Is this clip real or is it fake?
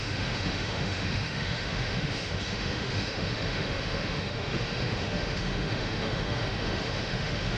fake